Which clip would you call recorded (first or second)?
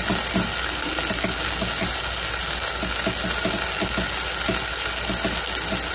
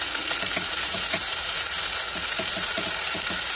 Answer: first